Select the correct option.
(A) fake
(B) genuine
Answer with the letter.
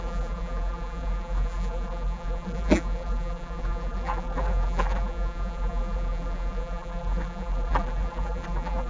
A